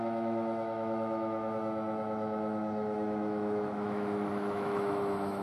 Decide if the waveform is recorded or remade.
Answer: remade